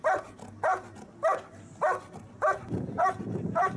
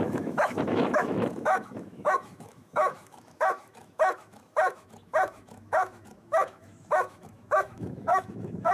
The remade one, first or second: second